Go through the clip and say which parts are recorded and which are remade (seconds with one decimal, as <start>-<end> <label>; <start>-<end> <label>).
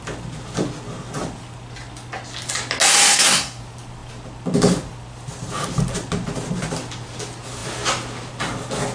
0.0-3.1 recorded; 3.1-3.6 remade; 3.6-8.9 recorded